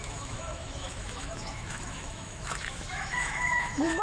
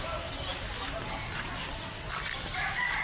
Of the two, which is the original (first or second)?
second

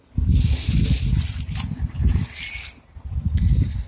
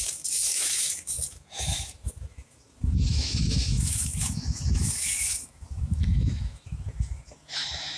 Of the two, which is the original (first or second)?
first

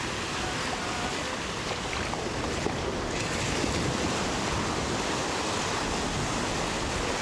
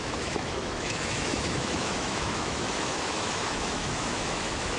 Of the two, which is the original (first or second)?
first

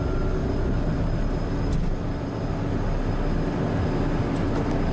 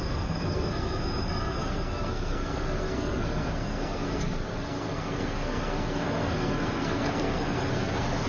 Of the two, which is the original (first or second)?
first